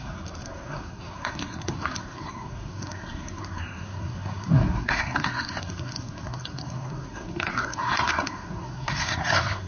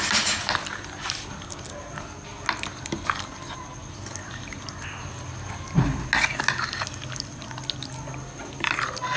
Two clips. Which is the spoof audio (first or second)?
first